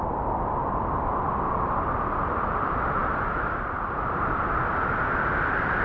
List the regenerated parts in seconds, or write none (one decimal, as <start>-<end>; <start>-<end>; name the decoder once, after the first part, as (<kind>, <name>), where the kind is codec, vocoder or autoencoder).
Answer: none